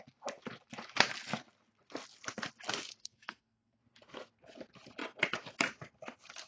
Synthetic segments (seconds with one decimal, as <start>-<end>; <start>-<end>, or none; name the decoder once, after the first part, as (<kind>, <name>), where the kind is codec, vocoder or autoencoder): 3.0-3.8 (codec, SNAC)